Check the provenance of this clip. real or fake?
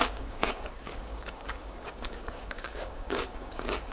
fake